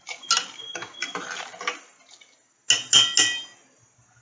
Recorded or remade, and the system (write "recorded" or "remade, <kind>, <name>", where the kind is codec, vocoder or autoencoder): recorded